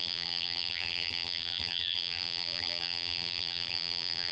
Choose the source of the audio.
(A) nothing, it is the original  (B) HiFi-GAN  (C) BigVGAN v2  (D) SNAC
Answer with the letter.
C